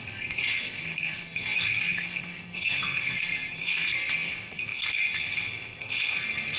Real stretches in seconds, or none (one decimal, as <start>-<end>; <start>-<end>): none